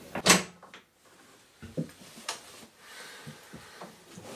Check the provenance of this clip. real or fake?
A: real